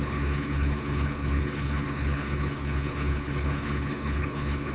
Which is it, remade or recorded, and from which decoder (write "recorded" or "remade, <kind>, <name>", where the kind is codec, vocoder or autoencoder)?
remade, codec, HILCodec